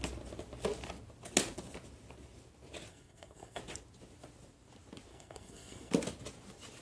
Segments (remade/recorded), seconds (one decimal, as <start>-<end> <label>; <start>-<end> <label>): 0.0-2.9 recorded; 2.9-3.6 remade; 3.6-5.1 recorded; 5.1-5.9 remade; 5.9-6.8 recorded